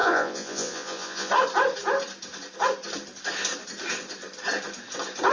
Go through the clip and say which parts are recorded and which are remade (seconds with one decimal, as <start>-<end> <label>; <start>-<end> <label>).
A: 0.0-1.3 remade; 1.3-5.3 recorded